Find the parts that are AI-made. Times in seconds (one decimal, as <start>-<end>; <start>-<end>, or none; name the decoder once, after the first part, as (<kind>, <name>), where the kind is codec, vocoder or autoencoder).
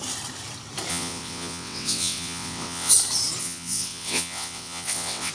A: 0.9-2.9 (vocoder, WaveNeXt); 3.4-5.3